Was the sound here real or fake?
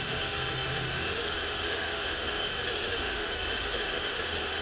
fake